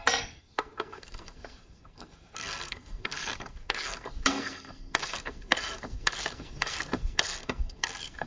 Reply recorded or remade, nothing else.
remade